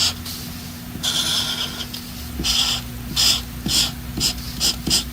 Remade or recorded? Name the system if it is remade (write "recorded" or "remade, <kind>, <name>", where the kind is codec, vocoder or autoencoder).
recorded